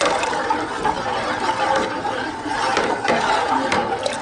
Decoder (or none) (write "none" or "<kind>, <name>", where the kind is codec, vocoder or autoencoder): vocoder, BigVGAN v2